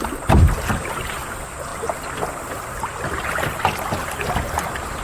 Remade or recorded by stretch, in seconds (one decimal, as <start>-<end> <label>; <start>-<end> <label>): 0.0-5.0 recorded